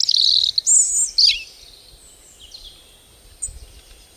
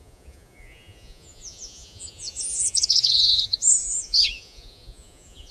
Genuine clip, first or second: first